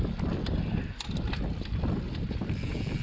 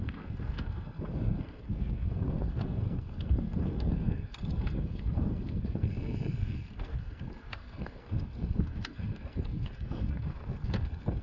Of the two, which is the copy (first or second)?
second